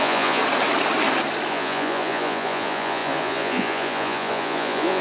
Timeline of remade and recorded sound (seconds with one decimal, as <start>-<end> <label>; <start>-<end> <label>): 0.0-0.4 remade; 0.4-1.5 recorded; 1.5-5.0 remade